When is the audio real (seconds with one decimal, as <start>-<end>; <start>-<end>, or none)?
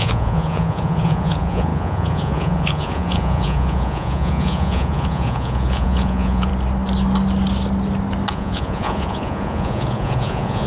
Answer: 6.5-8.3